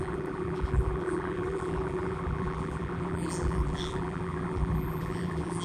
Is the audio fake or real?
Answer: fake